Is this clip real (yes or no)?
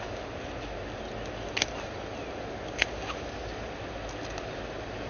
yes